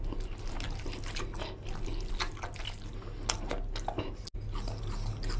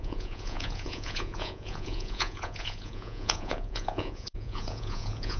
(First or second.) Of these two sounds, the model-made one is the second